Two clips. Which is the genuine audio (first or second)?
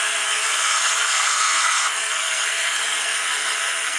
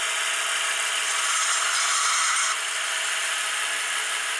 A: second